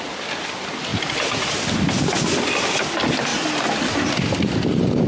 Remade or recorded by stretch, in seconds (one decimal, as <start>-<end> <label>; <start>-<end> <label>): 0.0-5.1 recorded